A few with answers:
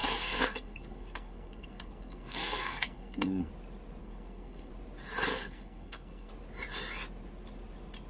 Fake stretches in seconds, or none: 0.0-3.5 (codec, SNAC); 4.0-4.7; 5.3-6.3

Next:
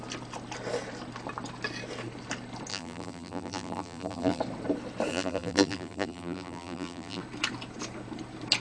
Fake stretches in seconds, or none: 2.7-4.4 (vocoder, BigVGAN v2); 5.1-7.2